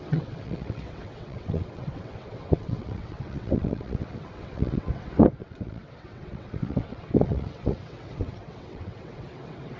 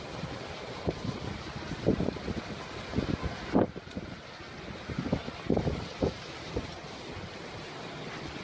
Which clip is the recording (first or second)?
second